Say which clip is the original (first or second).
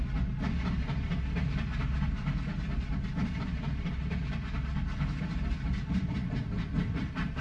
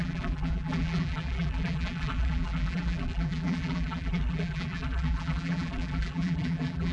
first